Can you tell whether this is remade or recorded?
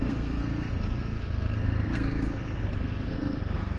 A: remade